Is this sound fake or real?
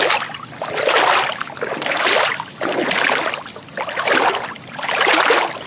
real